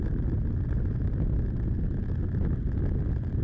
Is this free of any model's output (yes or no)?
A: yes